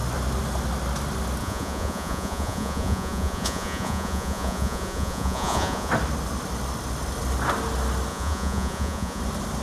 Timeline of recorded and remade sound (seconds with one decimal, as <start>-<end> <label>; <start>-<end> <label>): 0.0-1.4 recorded; 1.4-5.9 remade; 5.9-8.1 recorded; 8.1-9.2 remade; 9.2-9.6 recorded